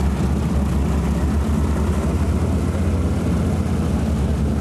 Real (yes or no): yes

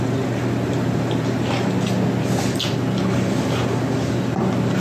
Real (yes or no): yes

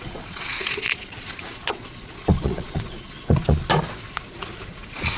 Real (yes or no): no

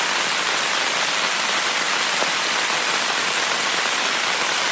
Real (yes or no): yes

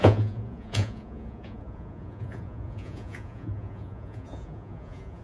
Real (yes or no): no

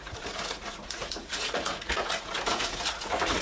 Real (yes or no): no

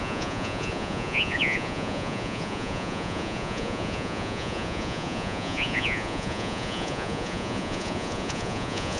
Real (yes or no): no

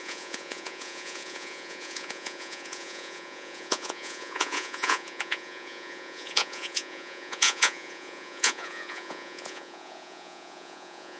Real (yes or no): no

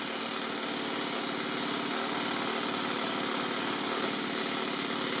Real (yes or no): yes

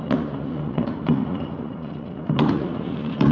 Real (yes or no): no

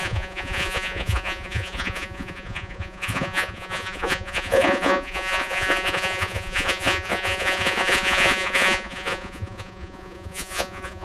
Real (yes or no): no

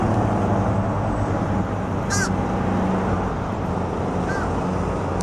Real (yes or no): yes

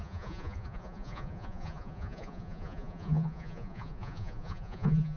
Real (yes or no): no